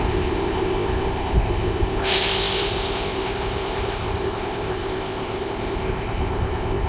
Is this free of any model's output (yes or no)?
no